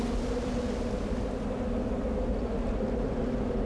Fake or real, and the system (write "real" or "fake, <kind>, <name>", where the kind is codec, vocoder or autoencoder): real